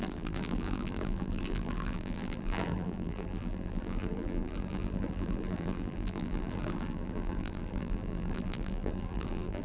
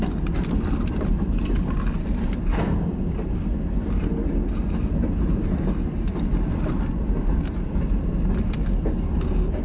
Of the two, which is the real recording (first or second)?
second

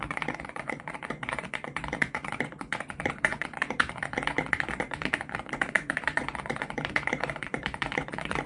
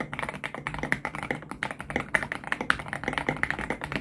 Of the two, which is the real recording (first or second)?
second